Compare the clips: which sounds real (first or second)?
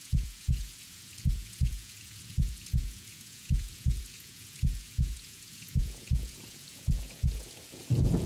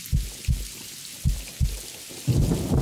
second